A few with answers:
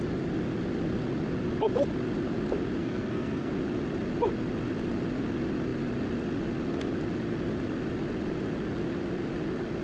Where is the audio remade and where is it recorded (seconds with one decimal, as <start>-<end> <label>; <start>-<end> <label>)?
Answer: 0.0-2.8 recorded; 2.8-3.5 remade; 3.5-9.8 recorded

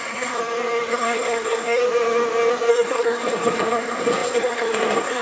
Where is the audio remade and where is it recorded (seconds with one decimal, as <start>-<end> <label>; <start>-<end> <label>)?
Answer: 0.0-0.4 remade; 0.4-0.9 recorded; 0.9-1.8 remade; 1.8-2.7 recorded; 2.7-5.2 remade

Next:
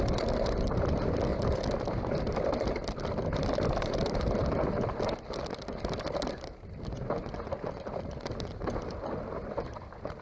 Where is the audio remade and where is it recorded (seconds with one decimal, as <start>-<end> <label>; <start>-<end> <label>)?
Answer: 0.0-1.3 remade; 1.3-2.1 recorded; 2.1-4.4 remade; 4.4-7.9 recorded; 7.9-10.2 remade